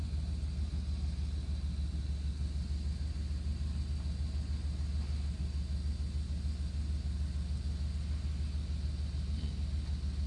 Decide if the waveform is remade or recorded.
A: recorded